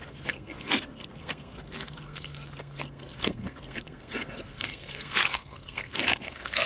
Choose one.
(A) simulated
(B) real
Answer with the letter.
A